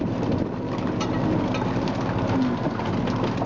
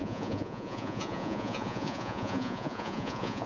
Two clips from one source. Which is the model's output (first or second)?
second